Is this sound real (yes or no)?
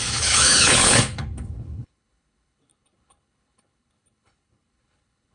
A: no